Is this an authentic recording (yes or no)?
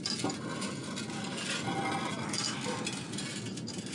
yes